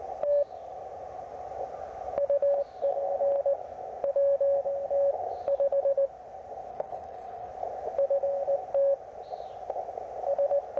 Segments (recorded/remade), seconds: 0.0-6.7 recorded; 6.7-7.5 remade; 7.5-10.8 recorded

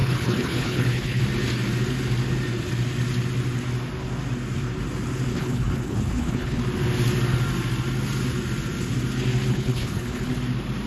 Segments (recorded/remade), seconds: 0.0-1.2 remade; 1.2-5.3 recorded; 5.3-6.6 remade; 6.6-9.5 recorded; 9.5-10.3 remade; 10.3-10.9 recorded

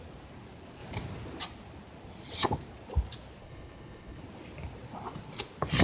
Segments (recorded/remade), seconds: 0.0-3.4 recorded; 3.4-4.2 remade; 4.2-5.8 recorded

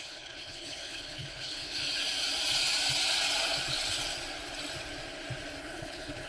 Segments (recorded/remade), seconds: 0.0-1.8 remade; 1.8-5.6 recorded; 5.6-6.3 remade

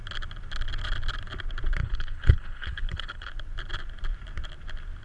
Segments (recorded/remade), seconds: 0.0-1.8 recorded; 1.8-3.3 remade; 3.3-5.0 recorded

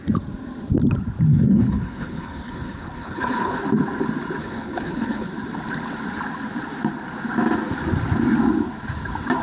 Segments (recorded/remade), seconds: 0.0-1.3 recorded; 1.3-3.6 remade; 3.6-4.4 recorded; 4.4-5.3 remade; 5.3-9.4 recorded

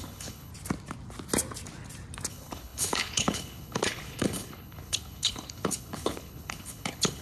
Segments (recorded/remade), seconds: 0.0-0.5 remade; 0.5-2.3 recorded; 2.3-7.2 remade

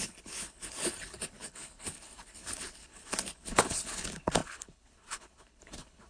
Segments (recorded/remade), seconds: 0.0-6.1 remade